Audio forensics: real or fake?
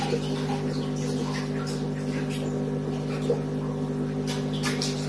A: real